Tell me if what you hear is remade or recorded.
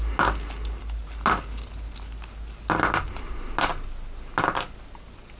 recorded